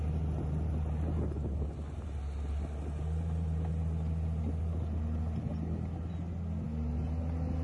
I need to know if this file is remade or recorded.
recorded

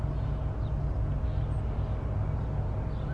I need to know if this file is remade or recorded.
recorded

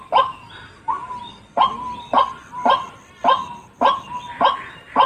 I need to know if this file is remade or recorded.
recorded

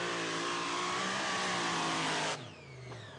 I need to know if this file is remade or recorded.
recorded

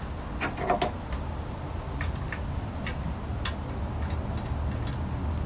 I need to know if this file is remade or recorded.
recorded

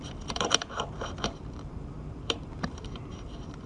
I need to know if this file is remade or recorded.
remade